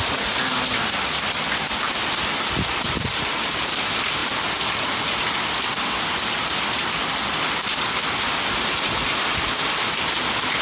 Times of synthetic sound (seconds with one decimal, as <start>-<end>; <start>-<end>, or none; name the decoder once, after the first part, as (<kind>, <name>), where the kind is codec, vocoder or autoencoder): none